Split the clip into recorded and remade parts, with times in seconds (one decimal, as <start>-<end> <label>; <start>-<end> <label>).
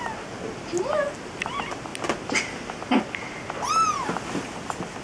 0.0-5.0 recorded